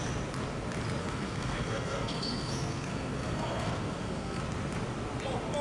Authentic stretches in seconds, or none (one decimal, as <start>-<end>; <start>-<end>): 0.0-1.0; 4.4-5.6